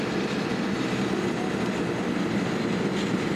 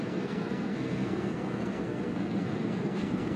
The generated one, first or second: second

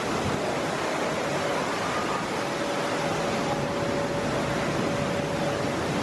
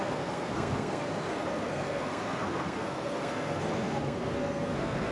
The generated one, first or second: second